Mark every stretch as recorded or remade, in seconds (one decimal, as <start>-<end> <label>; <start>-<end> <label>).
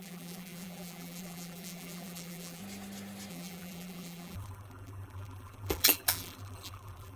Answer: 0.0-2.6 remade; 2.6-3.3 recorded; 3.3-7.2 remade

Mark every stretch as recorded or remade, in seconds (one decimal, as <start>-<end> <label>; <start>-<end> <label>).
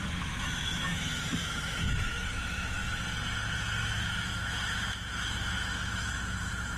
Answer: 0.0-2.8 remade; 2.8-3.8 recorded; 3.8-6.8 remade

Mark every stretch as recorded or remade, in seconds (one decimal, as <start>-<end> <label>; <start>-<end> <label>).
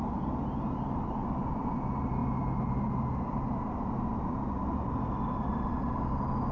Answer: 0.0-6.5 recorded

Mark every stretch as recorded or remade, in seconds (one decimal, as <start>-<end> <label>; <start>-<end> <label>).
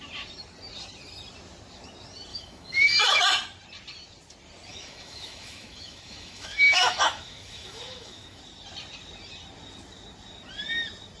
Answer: 0.0-2.3 recorded; 2.3-3.2 remade; 3.2-4.7 recorded; 4.7-8.4 remade; 8.4-11.2 recorded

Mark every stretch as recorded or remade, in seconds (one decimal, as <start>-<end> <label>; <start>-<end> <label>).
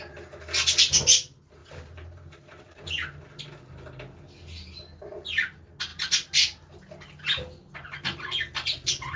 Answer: 0.0-1.6 recorded; 1.6-2.6 remade; 2.6-9.2 recorded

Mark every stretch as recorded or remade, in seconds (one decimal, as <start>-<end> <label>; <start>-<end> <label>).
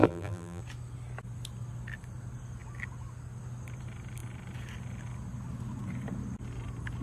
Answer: 0.0-0.6 remade; 0.6-7.0 recorded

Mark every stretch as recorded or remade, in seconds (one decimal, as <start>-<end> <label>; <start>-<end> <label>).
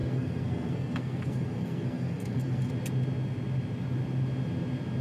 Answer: 0.0-2.7 remade; 2.7-5.0 recorded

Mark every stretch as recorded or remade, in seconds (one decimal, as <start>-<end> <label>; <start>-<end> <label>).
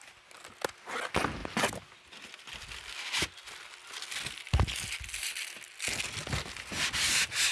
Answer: 0.0-7.5 recorded